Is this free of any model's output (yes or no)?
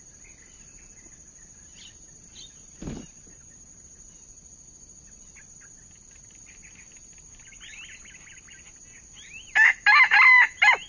yes